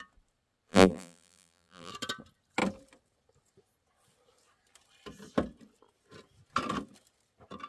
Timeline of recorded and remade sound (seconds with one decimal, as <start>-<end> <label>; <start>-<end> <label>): 0.0-0.7 recorded; 0.7-1.9 remade; 1.9-7.7 recorded